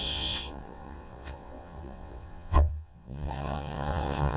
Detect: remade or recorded remade